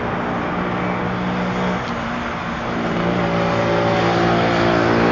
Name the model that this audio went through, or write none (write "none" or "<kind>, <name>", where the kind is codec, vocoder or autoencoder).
none